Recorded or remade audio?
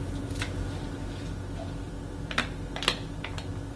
recorded